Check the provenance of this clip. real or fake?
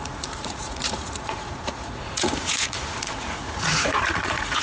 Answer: fake